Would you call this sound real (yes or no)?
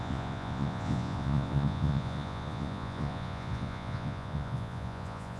no